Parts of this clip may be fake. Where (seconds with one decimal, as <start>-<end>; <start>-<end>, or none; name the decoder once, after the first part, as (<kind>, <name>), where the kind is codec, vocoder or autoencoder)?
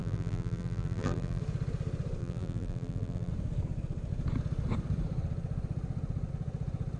0.0-1.4 (vocoder, BigVGAN v2); 2.2-3.3